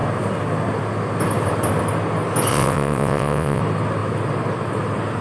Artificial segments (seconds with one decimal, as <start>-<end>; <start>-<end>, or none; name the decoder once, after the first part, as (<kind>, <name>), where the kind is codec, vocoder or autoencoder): 2.5-3.6 (vocoder, WaveNeXt)